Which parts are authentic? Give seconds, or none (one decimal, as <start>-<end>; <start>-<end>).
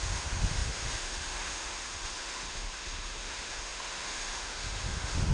none